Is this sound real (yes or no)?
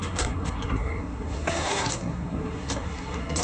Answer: no